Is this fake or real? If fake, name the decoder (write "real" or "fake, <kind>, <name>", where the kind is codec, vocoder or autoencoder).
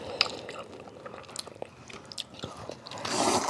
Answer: real